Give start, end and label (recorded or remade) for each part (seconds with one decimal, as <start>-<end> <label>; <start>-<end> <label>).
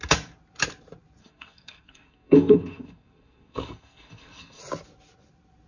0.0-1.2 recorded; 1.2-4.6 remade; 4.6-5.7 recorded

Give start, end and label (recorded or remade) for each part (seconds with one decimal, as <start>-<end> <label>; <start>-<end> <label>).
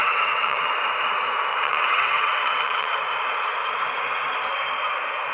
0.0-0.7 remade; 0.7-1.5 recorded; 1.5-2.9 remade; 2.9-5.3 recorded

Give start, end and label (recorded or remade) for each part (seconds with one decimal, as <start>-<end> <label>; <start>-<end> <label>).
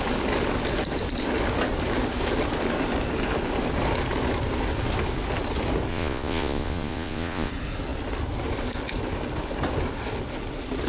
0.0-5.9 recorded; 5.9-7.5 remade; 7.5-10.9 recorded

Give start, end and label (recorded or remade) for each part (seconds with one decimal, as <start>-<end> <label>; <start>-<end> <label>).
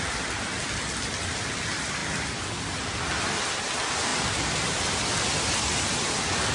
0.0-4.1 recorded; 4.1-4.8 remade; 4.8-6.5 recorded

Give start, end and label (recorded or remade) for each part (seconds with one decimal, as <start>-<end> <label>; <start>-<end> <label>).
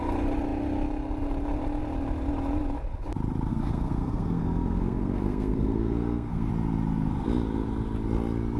0.0-3.5 recorded; 3.5-6.5 remade; 6.5-8.6 recorded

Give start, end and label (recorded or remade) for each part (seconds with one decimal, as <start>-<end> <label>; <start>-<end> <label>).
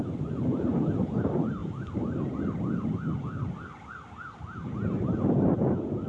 0.0-6.1 recorded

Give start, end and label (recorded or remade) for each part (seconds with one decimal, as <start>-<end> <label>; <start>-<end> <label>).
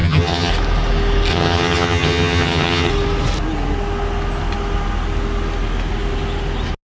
0.0-0.5 remade; 0.5-1.3 recorded; 1.3-2.9 remade; 2.9-7.0 recorded